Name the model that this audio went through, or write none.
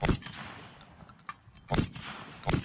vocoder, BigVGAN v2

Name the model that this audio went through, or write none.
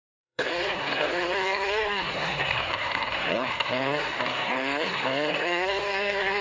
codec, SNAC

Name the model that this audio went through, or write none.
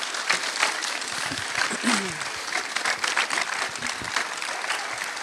vocoder, BigVGAN v2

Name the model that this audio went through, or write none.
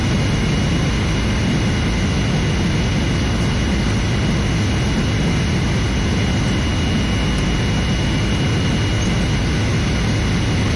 none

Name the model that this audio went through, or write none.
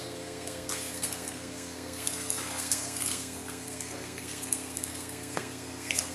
codec, SNAC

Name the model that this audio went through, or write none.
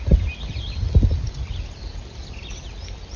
none